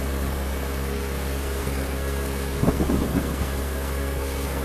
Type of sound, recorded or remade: remade